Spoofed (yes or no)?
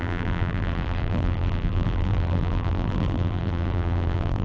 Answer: yes